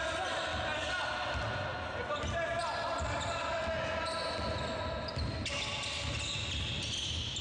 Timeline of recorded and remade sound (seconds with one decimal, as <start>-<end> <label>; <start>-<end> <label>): 0.0-7.4 recorded